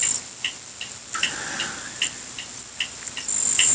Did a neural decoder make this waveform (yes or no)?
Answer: no